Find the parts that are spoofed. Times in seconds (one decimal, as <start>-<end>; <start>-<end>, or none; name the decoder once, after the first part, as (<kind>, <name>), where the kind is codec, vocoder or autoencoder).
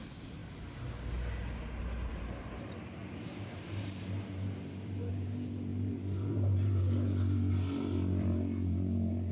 0.0-0.4 (vocoder, BigVGAN v2); 2.1-9.3